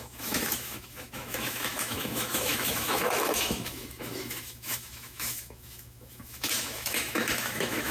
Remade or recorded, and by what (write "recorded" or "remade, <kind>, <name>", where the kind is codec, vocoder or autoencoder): remade, autoencoder, DAC-VAE